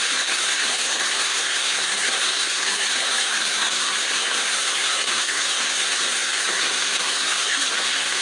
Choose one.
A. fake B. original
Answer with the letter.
A